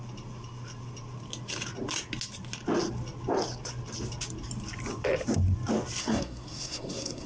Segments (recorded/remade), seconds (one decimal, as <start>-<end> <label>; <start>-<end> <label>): 0.0-6.0 recorded; 6.0-7.3 remade